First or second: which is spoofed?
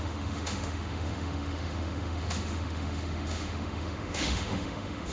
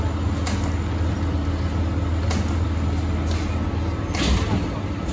first